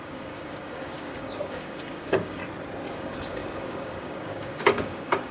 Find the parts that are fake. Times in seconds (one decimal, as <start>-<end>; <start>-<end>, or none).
0.0-2.4; 2.9-5.3

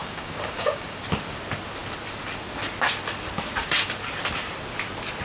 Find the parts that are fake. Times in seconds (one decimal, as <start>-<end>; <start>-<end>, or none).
0.0-1.0

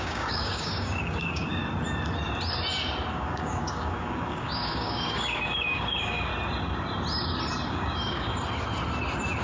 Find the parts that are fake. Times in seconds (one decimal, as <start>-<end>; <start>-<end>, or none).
0.0-1.6; 3.1-6.3; 7.7-8.3

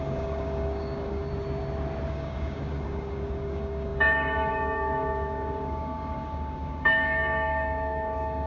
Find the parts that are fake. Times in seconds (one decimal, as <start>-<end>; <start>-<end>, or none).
0.0-1.3; 2.1-8.5